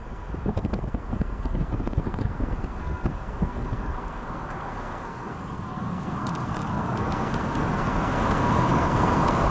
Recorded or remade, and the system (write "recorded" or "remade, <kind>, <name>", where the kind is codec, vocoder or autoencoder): remade, codec, SNAC